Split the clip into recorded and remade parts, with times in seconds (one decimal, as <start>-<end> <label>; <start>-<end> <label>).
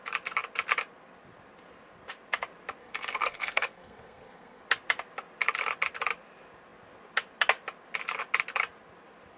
0.0-2.8 recorded; 2.8-4.6 remade; 4.6-9.4 recorded